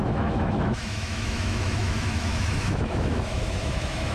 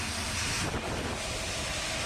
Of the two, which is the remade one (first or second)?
first